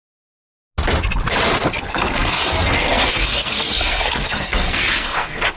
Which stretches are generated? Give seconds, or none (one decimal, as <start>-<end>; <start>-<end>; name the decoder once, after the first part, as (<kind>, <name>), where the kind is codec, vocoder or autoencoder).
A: 1.8-5.6 (codec, SNAC)